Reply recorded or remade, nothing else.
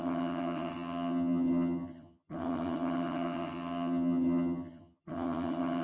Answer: remade